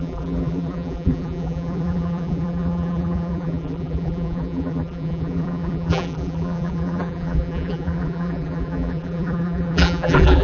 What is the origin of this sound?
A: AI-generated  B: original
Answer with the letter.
A